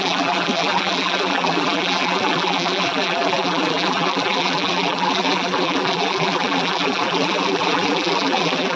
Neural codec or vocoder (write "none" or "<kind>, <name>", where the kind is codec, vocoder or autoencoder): vocoder, BigVGAN v2